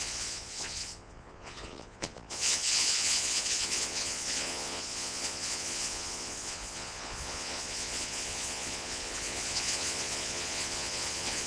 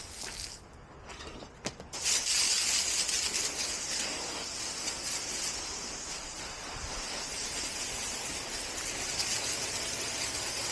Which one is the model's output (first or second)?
first